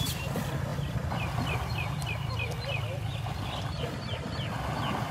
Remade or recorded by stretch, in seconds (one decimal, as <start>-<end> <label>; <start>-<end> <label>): 0.0-5.1 recorded